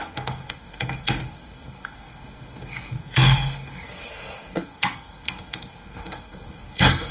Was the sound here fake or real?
fake